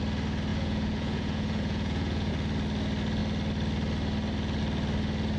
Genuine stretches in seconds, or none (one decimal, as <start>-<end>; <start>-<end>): 0.0-0.5; 2.3-5.4